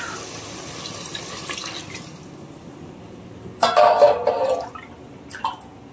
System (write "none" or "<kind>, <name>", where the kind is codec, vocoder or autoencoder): none